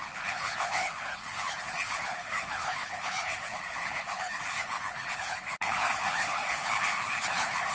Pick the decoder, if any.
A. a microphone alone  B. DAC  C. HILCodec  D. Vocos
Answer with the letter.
C